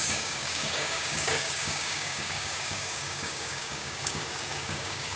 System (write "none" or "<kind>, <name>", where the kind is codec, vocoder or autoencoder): codec, DAC